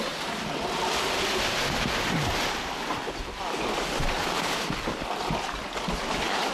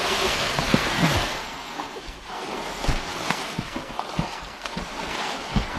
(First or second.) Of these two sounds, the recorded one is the first